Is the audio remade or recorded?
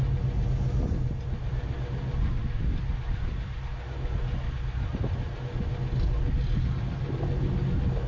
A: recorded